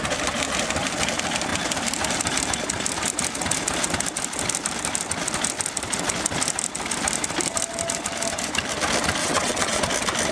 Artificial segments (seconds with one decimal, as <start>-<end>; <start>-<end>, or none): 9.2-9.8

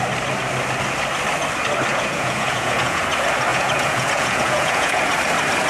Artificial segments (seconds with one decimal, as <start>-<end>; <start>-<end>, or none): 1.9-3.0; 3.5-5.0

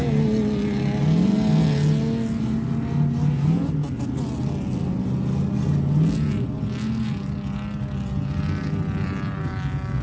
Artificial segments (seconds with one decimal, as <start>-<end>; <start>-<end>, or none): none

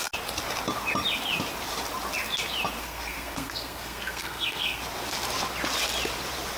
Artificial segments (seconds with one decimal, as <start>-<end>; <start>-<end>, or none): 2.8-4.8